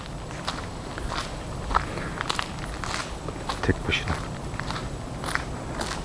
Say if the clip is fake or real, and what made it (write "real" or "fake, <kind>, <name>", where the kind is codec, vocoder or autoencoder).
real